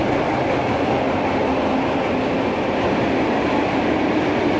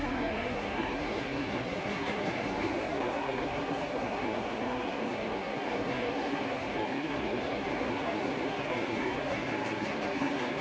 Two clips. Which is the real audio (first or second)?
first